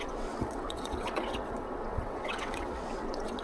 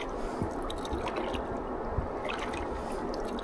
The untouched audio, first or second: second